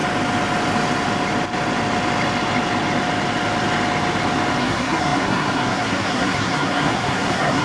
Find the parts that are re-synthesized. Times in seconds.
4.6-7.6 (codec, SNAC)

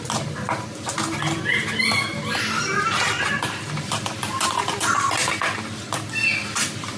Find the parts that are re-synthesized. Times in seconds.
none

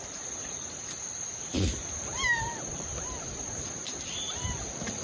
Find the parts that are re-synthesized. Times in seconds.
0.0-2.1 (vocoder, BigVGAN v2); 2.7-5.0

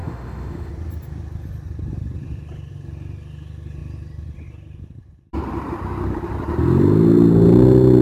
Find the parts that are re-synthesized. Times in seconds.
0.0-0.7 (autoencoder, DAC-VAE)

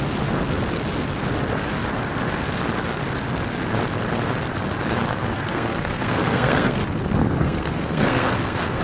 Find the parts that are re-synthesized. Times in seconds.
5.1-6.8 (codec, SNAC); 7.2-8.8

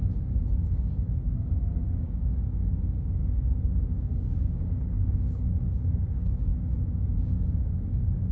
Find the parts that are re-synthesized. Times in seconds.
0.0-6.5 (codec, DAC); 7.2-8.3